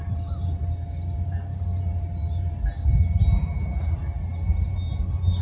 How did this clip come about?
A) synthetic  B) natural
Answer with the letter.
B